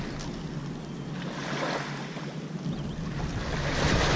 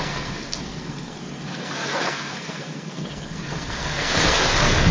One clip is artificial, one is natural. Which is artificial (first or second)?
second